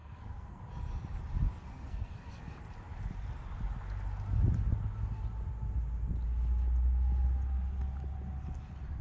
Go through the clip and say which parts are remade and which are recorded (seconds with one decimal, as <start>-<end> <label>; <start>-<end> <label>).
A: 0.0-0.6 remade; 0.6-1.7 recorded; 1.7-2.4 remade; 2.4-9.0 recorded